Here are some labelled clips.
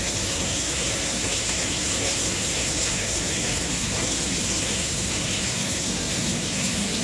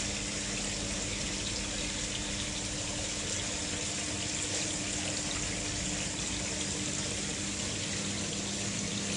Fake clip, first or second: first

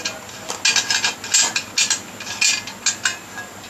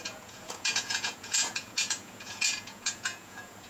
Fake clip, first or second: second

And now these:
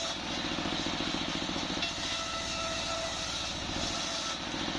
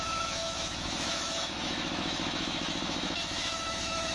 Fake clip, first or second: second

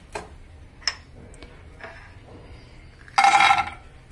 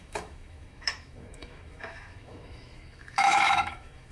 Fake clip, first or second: second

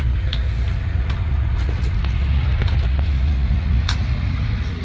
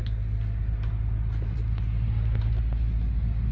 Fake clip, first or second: first